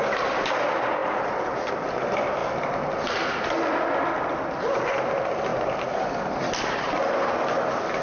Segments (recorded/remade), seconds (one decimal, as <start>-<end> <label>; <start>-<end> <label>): 0.0-8.0 recorded